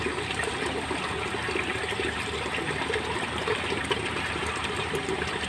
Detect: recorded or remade recorded